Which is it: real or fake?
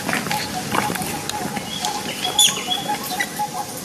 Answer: real